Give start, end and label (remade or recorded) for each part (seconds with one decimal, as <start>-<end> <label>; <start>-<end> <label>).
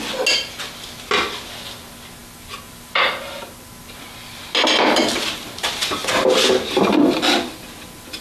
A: 0.0-8.2 recorded